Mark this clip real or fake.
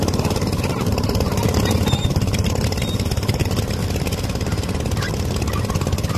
real